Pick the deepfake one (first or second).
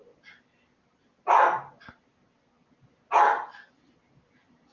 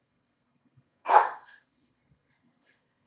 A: second